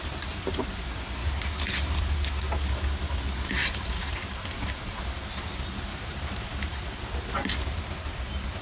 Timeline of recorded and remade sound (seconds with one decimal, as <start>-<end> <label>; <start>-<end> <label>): 0.0-3.6 recorded; 3.6-5.0 remade; 5.0-5.9 recorded; 5.9-6.8 remade; 6.8-8.6 recorded